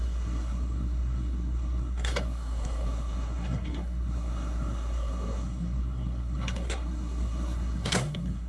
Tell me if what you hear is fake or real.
fake